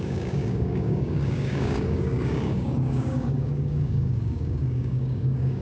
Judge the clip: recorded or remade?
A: remade